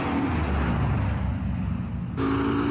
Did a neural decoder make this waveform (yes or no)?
no